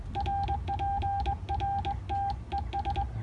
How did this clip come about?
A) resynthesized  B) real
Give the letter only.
B